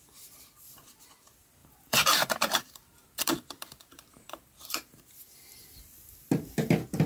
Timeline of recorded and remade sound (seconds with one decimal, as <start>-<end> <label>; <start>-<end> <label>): 0.0-1.6 recorded; 1.6-5.0 remade; 5.0-7.1 recorded